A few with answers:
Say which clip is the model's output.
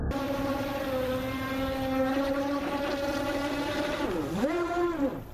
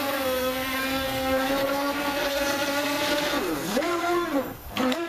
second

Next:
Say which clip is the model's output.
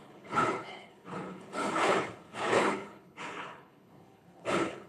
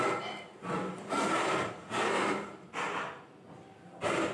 first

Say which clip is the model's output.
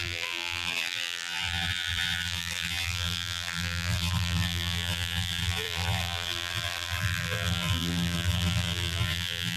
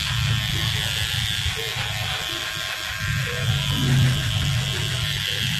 first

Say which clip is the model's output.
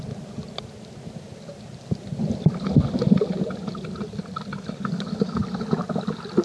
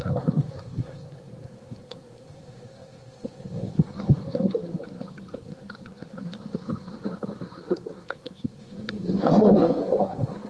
second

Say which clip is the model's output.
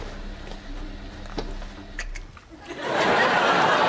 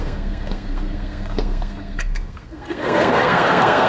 second